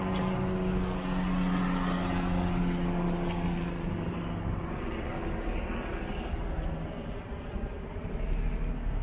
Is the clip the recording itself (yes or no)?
yes